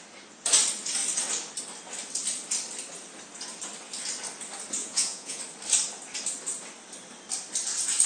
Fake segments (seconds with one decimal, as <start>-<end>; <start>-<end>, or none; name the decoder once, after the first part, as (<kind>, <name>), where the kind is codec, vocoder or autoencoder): 4.8-5.4 (vocoder, Vocos)

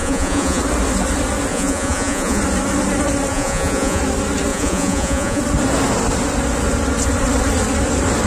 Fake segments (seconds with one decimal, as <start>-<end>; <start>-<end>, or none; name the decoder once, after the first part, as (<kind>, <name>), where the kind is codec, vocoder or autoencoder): 0.0-0.6 (vocoder, Vocos); 1.5-2.4; 3.3-4.0; 4.5-5.4

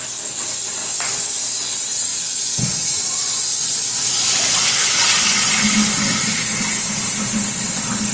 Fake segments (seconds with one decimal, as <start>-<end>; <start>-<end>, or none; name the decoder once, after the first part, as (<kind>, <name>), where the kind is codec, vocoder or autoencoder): 0.8-1.4 (vocoder, Vocos); 2.1-6.9

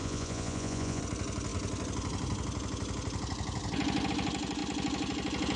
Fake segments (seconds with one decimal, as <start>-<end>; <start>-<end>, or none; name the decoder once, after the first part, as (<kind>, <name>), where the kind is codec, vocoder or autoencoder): 0.0-1.0 (vocoder, Vocos)

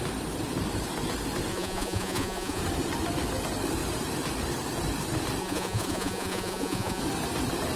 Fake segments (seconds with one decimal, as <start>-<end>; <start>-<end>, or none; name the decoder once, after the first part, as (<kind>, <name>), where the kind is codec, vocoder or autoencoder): 1.5-2.6 (vocoder, Vocos); 5.4-7.0

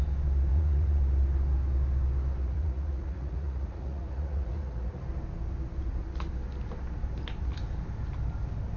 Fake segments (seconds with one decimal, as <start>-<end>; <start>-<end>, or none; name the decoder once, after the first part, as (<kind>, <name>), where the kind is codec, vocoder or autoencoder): 0.5-1.0 (vocoder, Vocos); 2.4-5.0

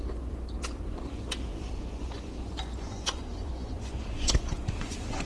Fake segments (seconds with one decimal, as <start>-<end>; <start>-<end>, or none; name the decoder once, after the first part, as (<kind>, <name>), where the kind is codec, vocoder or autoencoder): 0.0-5.2 (vocoder, Vocos)

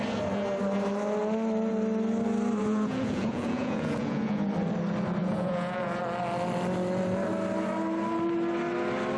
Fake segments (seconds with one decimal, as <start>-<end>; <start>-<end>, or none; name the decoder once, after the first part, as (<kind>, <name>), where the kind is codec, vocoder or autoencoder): 2.6-4.5 (vocoder, Vocos); 5.2-6.0